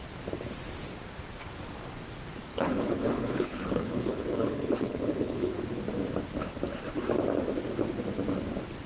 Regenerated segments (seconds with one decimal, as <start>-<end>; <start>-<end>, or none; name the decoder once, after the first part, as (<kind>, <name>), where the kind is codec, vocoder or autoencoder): 2.5-5.6 (codec, HILCodec)